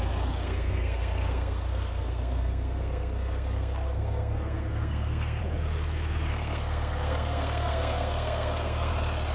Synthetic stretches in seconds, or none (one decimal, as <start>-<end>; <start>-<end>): 0.4-5.4; 6.3-8.9